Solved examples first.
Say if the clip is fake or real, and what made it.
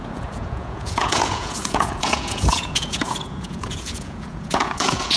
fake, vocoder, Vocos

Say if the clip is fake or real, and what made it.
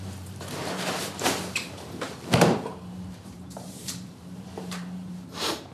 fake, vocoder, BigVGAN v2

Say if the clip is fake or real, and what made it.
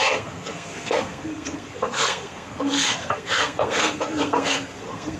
fake, codec, SNAC